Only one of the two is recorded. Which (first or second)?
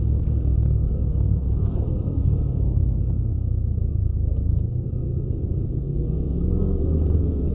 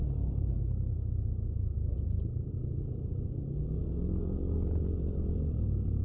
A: second